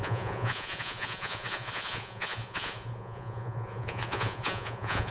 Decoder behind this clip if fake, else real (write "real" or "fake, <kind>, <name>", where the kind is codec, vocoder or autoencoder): fake, vocoder, Vocos